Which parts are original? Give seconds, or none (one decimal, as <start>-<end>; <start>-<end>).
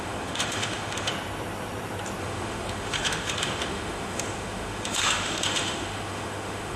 1.1-2.2